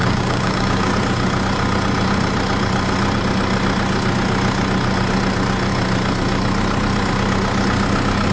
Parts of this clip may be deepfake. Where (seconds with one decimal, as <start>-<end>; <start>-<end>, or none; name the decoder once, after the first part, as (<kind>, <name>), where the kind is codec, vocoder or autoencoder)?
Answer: 0.0-0.9 (codec, DAC)